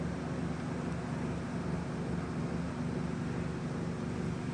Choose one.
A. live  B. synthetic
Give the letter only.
A